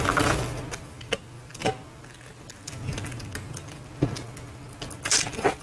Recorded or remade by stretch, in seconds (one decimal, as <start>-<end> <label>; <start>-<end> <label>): 0.0-5.6 recorded